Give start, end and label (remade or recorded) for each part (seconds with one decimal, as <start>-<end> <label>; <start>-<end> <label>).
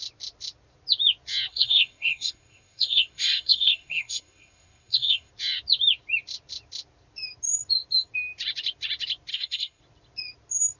0.0-1.5 recorded; 1.5-5.3 remade; 5.3-9.3 recorded; 9.3-9.8 remade; 9.8-10.8 recorded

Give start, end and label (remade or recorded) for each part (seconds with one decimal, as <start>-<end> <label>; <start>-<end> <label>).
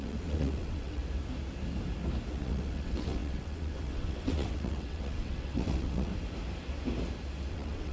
0.0-1.0 remade; 1.0-2.3 recorded; 2.3-6.1 remade; 6.1-7.5 recorded; 7.5-7.9 remade